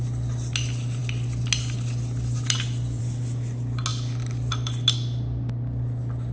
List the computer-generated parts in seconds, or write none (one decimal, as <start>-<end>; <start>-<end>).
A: none